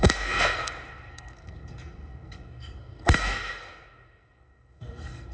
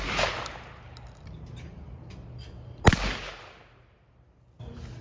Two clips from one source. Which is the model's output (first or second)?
first